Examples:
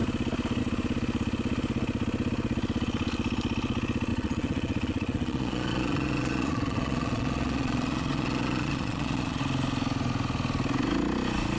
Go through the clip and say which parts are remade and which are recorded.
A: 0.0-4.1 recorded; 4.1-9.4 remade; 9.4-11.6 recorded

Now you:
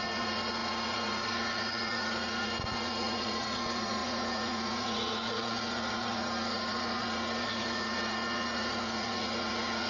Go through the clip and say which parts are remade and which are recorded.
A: 0.0-9.9 remade

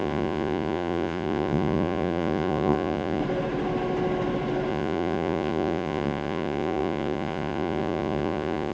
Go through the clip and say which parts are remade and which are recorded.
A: 0.0-3.2 remade; 3.2-4.7 recorded; 4.7-8.7 remade

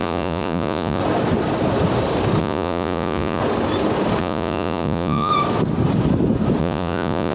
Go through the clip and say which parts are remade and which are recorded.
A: 0.0-1.0 remade; 1.0-2.4 recorded; 2.4-3.4 remade; 3.4-4.2 recorded; 4.2-5.3 remade; 5.3-6.6 recorded; 6.6-7.3 remade

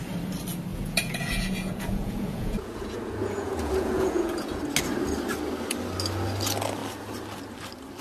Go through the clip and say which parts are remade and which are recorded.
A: 0.0-0.7 recorded; 0.7-4.6 remade; 4.6-8.0 recorded

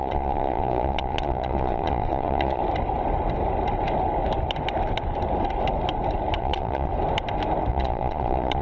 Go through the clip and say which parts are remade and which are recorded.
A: 0.0-2.6 remade; 2.6-6.4 recorded; 6.4-6.9 remade; 6.9-7.7 recorded; 7.7-8.6 remade